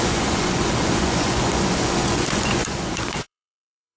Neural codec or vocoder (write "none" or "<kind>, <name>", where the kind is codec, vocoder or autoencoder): vocoder, Vocos